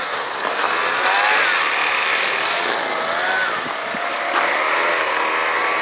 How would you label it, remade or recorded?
recorded